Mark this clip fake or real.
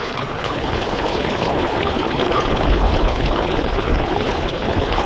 fake